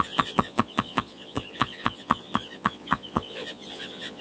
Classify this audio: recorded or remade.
remade